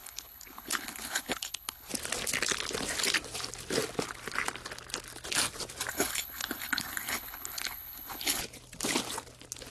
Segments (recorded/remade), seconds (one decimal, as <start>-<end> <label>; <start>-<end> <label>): 0.0-1.9 remade; 1.9-5.9 recorded; 5.9-8.4 remade; 8.4-9.7 recorded